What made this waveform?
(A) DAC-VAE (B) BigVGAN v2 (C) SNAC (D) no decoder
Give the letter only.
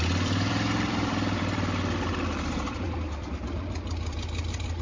B